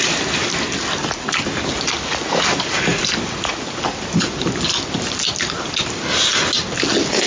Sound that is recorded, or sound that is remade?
recorded